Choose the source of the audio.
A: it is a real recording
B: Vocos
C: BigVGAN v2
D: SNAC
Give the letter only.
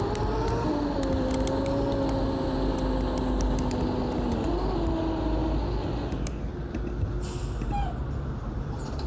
A